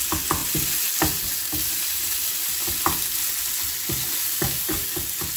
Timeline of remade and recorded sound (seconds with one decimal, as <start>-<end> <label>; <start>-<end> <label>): 0.0-0.4 recorded; 0.4-3.2 remade; 3.2-5.4 recorded